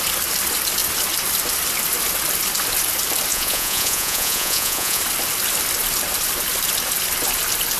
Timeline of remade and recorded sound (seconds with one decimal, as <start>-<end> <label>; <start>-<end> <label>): 0.0-3.3 recorded; 3.3-5.0 remade; 5.0-7.8 recorded